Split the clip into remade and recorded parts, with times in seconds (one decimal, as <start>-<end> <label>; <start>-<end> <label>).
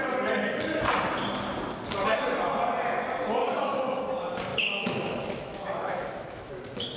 0.0-3.4 recorded; 3.4-4.0 remade; 4.0-4.5 recorded; 4.5-6.5 remade; 6.5-7.0 recorded